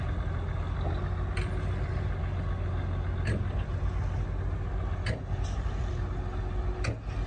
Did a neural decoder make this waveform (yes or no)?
no